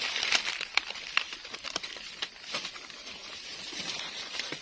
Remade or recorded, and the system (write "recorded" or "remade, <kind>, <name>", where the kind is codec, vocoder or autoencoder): remade, vocoder, BigVGAN v2